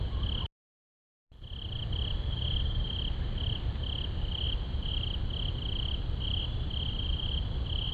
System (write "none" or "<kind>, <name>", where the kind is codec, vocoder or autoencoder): none